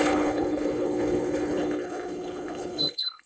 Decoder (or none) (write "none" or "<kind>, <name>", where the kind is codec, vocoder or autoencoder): codec, HILCodec